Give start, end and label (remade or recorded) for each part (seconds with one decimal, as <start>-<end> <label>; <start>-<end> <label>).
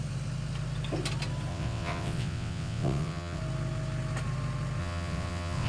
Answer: 0.0-1.5 recorded; 1.5-3.4 remade; 3.4-4.8 recorded; 4.8-5.7 remade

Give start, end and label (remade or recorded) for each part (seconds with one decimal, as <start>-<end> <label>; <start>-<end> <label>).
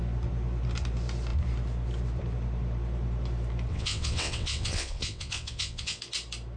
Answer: 0.0-3.7 recorded; 3.7-6.0 remade; 6.0-6.6 recorded